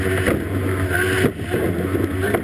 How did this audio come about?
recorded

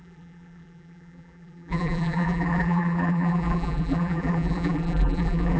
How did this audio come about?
remade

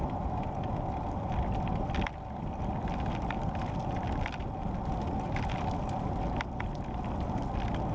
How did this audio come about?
recorded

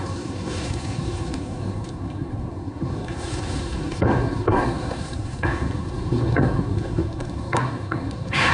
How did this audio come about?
remade